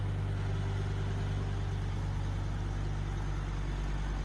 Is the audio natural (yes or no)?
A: yes